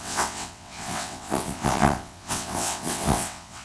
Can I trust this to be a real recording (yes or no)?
no